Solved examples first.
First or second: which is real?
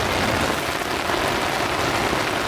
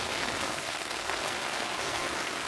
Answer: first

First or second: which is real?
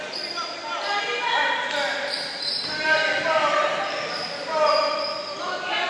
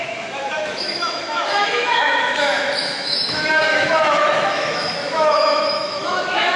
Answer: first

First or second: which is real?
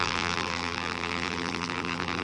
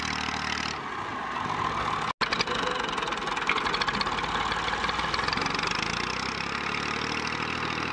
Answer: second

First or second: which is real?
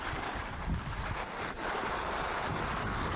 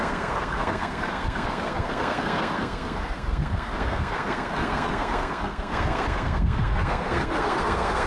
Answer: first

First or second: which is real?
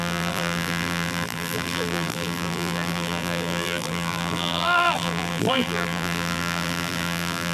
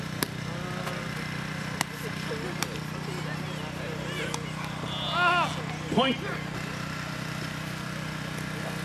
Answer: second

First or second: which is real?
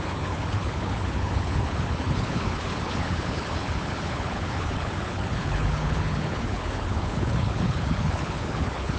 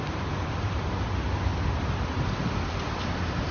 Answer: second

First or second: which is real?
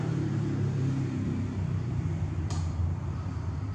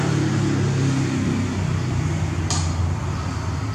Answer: second